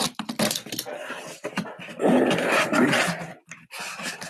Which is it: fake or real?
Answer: real